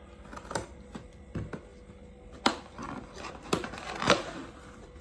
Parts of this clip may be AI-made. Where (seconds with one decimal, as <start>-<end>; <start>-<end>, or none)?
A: none